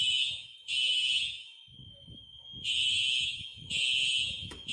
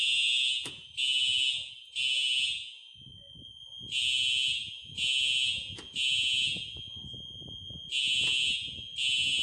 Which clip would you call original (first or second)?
second